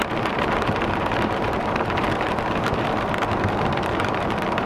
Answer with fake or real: fake